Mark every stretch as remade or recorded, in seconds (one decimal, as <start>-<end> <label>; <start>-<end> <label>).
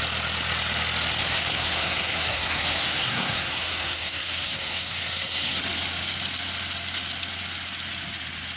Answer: 0.0-1.2 recorded; 1.2-5.6 remade; 5.6-8.6 recorded